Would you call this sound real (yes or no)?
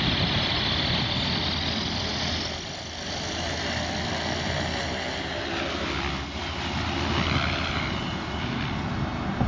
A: yes